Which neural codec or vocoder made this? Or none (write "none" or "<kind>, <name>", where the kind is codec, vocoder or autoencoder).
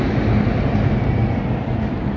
none